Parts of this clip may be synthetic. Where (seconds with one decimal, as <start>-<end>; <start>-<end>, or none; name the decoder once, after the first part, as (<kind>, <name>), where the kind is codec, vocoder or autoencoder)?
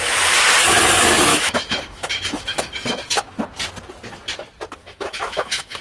1.3-3.4 (autoencoder, DAC-VAE); 4.8-5.8